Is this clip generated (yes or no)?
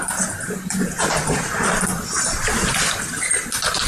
no